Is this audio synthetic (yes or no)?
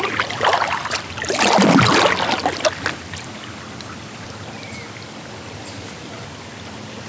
no